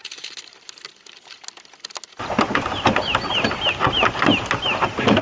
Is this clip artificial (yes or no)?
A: no